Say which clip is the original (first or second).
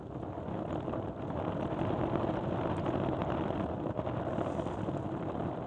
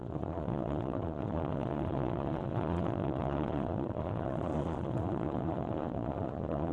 first